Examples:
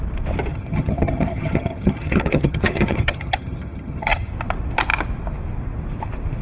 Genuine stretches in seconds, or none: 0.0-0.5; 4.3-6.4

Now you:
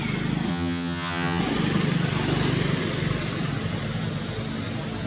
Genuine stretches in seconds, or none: 0.0-0.5; 1.4-5.1